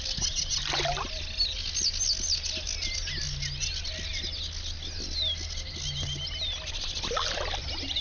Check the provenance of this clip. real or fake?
real